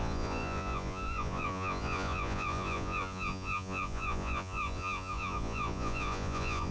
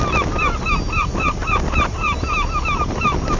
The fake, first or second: first